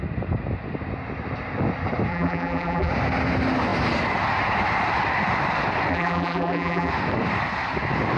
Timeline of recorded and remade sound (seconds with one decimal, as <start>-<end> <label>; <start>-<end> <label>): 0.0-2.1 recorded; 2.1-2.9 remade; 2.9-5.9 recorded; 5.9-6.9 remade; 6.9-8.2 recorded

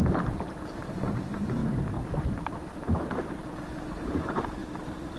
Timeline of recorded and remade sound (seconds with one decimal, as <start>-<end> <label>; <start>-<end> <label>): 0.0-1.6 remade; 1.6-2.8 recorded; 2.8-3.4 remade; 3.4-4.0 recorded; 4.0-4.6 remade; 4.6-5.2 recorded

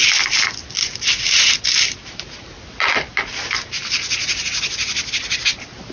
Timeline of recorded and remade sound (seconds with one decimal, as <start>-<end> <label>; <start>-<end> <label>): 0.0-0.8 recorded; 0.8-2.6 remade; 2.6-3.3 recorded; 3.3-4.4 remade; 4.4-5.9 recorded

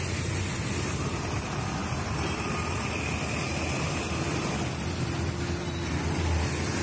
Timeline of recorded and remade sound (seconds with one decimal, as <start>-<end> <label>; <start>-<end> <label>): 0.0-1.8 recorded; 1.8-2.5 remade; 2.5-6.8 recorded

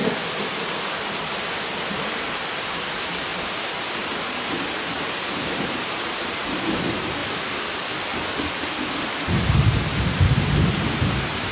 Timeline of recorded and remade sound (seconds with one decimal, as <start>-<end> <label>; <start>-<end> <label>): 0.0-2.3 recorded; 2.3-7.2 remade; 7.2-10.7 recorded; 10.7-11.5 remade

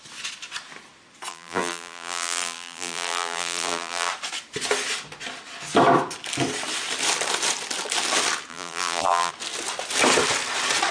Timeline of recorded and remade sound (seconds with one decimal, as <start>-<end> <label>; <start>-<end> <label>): 0.0-1.3 recorded; 1.3-4.1 remade; 4.1-8.5 recorded; 8.5-9.3 remade; 9.3-10.9 recorded